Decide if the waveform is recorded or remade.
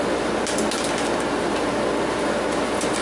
recorded